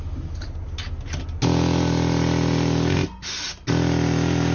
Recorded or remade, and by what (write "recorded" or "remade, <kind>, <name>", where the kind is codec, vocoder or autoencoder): recorded